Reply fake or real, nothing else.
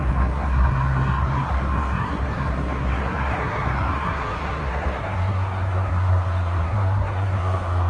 fake